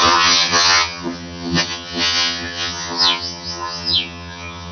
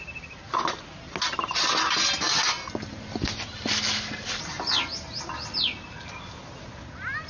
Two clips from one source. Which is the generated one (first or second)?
first